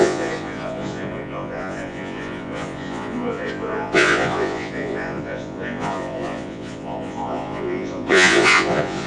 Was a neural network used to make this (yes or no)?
yes